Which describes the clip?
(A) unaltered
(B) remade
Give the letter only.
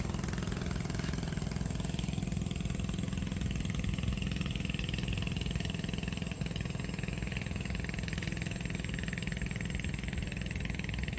A